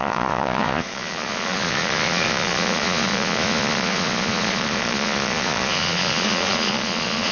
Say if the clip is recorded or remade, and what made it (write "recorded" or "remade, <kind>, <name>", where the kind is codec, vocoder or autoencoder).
remade, vocoder, Vocos